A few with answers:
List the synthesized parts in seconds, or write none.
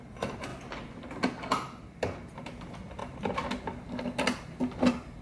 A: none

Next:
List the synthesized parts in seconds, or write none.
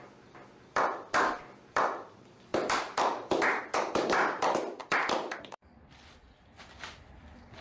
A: 0.0-7.6 (vocoder, BigVGAN v2)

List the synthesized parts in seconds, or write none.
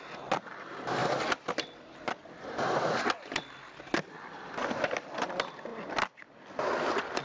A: none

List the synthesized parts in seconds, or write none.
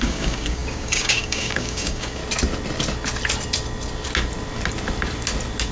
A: 0.0-2.2 (codec, DAC)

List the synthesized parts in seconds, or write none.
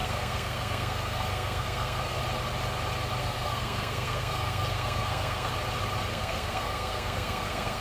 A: 0.0-2.2 (codec, SNAC); 3.2-5.5; 6.1-7.8